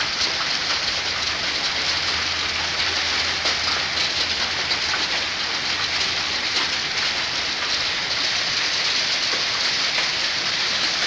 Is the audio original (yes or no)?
yes